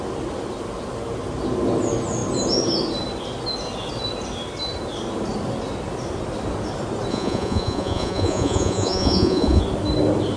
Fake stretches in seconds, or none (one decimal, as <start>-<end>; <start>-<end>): 7.1-9.6